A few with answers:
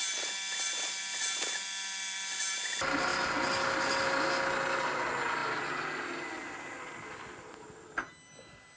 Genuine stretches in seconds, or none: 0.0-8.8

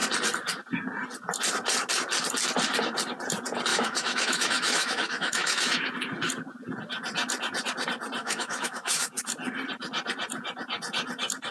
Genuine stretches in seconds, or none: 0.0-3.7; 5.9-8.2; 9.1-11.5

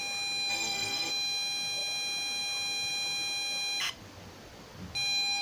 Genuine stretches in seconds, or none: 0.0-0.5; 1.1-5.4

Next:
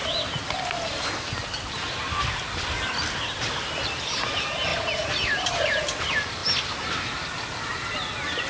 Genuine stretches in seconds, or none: 0.0-8.5

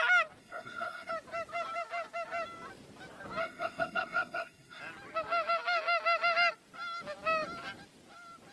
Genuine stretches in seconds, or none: 0.0-0.4; 1.1-3.4; 4.8-8.5